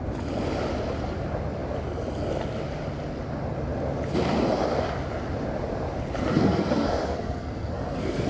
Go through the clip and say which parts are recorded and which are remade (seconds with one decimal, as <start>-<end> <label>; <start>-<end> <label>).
0.0-6.2 recorded; 6.2-8.3 remade